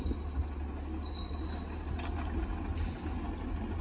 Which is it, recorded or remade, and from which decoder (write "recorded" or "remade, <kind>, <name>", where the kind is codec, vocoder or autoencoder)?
recorded